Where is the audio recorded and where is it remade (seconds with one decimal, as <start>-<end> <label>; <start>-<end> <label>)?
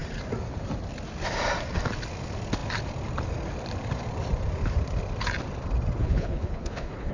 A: 0.0-6.0 recorded; 6.0-7.1 remade